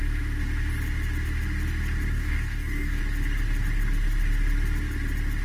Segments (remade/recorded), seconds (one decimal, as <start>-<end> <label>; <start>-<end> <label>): 0.0-2.1 recorded; 2.1-3.0 remade; 3.0-5.4 recorded